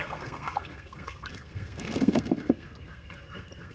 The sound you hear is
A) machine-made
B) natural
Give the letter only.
A